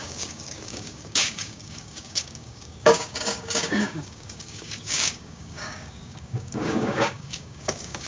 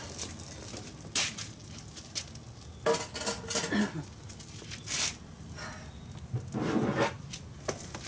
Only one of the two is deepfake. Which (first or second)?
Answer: first